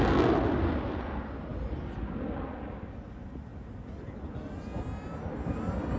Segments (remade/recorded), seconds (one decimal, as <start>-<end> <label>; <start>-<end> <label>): 0.0-6.0 recorded